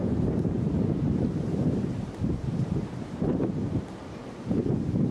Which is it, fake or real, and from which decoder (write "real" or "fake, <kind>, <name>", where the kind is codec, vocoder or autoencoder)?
fake, vocoder, BigVGAN v2